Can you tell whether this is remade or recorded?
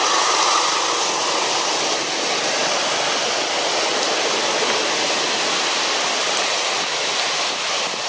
recorded